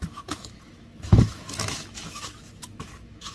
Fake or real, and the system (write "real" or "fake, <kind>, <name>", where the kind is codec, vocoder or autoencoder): fake, autoencoder, DAC-VAE